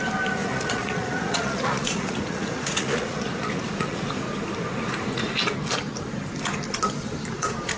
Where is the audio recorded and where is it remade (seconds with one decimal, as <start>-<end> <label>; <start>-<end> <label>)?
0.0-0.4 recorded; 0.4-4.0 remade; 4.0-7.8 recorded

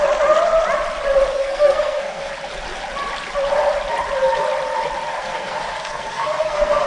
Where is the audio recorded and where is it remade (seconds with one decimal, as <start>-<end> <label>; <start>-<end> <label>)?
0.0-1.3 recorded; 1.3-2.3 remade; 2.3-5.1 recorded; 5.1-6.9 remade